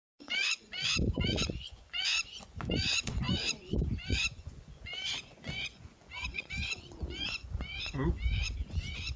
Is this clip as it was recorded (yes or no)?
no